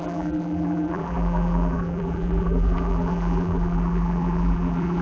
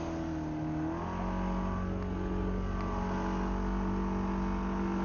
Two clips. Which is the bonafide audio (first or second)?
second